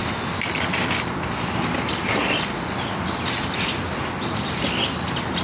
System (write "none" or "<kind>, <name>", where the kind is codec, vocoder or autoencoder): none